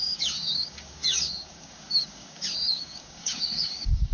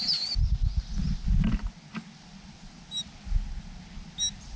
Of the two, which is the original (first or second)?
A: second